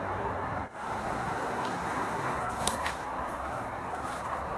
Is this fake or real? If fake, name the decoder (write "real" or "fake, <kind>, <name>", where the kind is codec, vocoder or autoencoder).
fake, codec, SNAC